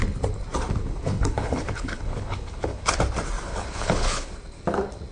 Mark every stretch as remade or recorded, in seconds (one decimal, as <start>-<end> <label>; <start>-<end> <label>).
0.0-0.8 recorded; 0.8-3.0 remade; 3.0-3.5 recorded; 3.5-4.3 remade; 4.3-5.1 recorded